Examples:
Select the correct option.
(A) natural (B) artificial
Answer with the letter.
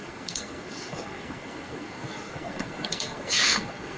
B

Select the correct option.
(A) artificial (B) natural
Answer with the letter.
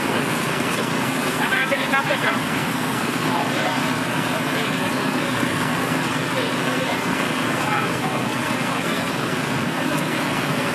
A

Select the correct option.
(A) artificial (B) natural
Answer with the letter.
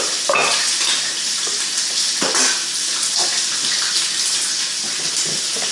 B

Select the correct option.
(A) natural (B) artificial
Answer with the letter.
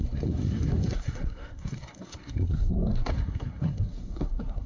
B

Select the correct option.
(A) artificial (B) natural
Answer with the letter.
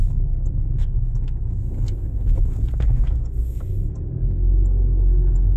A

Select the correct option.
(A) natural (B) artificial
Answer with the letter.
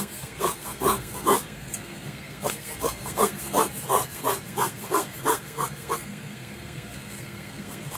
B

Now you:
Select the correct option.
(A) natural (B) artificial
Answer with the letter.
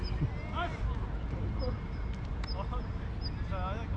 A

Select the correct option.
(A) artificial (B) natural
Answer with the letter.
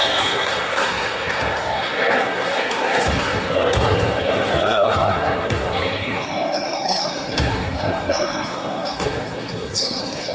A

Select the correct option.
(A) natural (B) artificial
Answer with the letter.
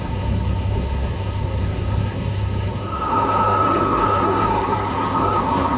B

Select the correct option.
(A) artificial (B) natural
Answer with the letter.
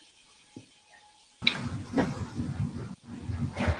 B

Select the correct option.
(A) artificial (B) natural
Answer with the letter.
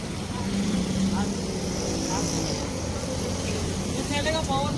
B